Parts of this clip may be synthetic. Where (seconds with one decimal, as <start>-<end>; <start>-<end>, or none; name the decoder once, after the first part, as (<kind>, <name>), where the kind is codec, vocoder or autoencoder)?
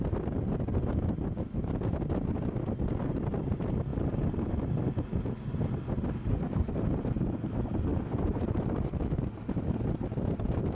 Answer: 6.3-6.8 (codec, SNAC)